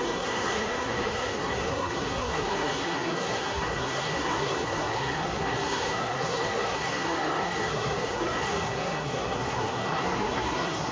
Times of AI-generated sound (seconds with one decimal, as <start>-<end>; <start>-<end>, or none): 0.0-10.9

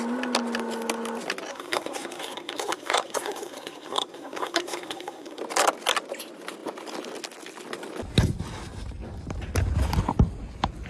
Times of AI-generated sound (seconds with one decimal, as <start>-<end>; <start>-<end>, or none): 1.5-5.4

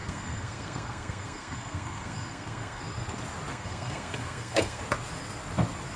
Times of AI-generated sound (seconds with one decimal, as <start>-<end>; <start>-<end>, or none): 0.0-2.8; 3.5-4.8